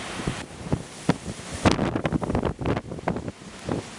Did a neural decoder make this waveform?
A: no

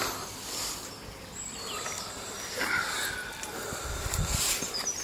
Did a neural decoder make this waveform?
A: no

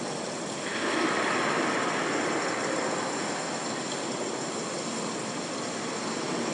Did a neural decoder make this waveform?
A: no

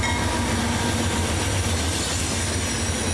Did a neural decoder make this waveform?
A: no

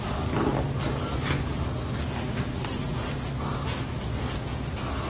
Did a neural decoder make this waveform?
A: no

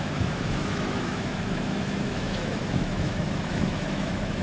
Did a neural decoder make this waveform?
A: yes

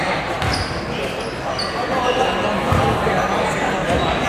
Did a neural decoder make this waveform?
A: no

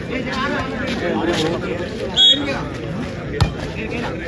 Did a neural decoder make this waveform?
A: no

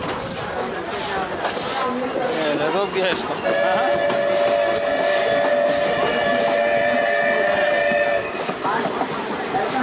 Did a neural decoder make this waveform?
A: no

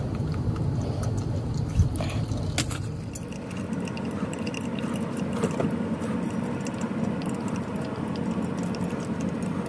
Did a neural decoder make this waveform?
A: no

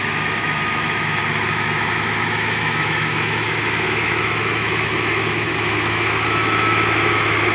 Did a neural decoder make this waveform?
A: yes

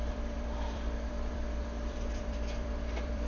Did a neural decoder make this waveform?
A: yes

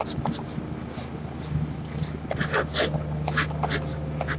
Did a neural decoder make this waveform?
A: no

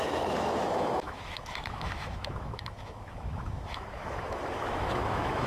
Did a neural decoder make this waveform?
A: yes